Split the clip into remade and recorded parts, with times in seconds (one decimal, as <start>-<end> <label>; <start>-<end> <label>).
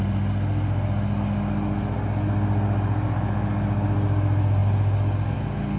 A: 0.0-5.8 recorded